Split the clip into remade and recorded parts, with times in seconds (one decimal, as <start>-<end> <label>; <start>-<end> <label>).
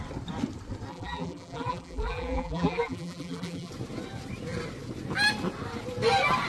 0.0-0.9 recorded; 0.9-3.7 remade; 3.7-6.5 recorded